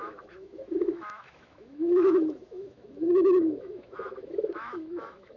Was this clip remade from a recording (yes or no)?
yes